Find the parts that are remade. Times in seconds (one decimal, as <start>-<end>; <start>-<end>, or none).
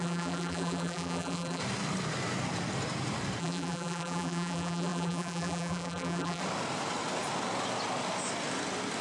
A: 0.0-1.6; 3.4-6.4